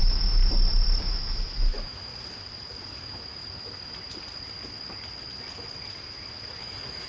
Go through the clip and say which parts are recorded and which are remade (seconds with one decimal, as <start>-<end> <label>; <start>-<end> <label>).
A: 0.0-0.4 remade; 0.4-1.0 recorded; 1.0-2.1 remade; 2.1-3.0 recorded; 3.0-3.4 remade; 3.4-6.6 recorded; 6.6-7.1 remade